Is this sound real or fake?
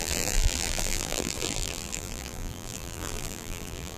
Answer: fake